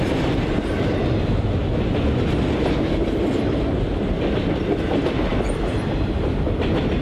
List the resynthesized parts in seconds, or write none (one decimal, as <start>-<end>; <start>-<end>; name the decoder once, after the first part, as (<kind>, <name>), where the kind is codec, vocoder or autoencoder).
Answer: none